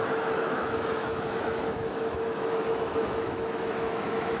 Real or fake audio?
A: fake